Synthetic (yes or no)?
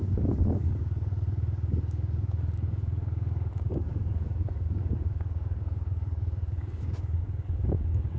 yes